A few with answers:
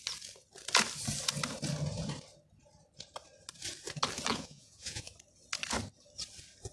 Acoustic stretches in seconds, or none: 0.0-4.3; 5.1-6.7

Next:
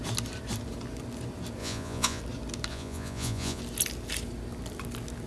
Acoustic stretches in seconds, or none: 0.0-1.6; 2.2-2.7; 3.6-5.3